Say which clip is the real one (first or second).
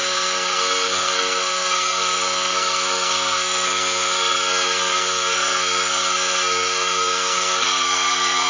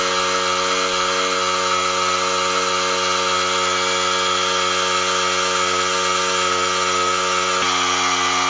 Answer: second